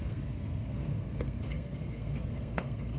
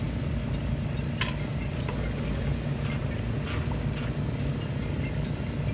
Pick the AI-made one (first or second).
first